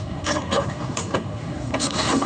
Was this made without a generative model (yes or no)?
no